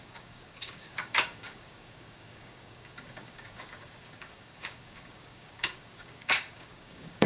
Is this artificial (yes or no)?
yes